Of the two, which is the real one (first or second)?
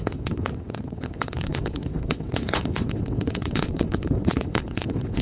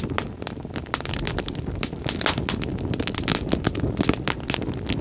second